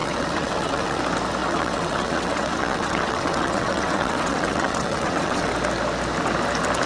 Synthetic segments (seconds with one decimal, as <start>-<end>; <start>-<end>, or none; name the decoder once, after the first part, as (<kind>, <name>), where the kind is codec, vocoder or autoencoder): 0.0-1.0 (vocoder, WaveNeXt); 1.4-5.5